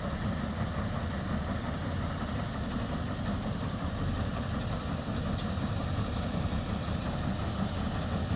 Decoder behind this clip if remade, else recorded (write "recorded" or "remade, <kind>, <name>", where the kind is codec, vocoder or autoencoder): recorded